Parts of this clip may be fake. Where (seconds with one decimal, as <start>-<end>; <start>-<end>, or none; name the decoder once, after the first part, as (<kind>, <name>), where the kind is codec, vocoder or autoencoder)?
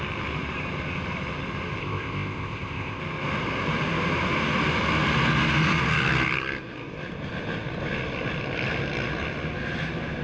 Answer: 1.8-3.0 (codec, ZipCodec)